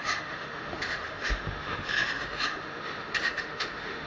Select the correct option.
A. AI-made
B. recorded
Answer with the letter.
A